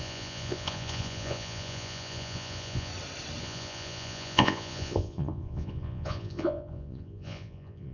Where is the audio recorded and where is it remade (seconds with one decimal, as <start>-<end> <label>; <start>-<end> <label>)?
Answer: 0.0-2.9 remade; 2.9-3.4 recorded; 3.4-7.9 remade